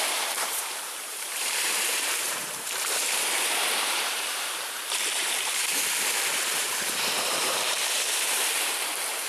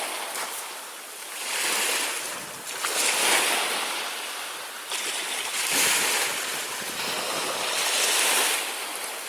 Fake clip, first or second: first